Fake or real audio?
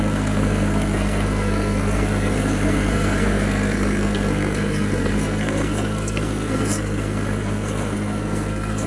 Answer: fake